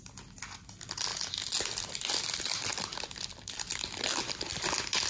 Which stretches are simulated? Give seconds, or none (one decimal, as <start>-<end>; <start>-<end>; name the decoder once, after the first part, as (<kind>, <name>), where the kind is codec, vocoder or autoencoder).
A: none